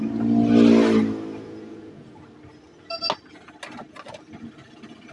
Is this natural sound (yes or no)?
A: yes